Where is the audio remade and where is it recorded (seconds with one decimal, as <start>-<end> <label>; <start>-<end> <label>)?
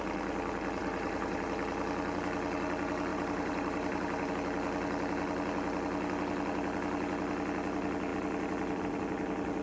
0.0-0.8 recorded; 0.8-1.4 remade; 1.4-3.1 recorded; 3.1-4.3 remade; 4.3-9.6 recorded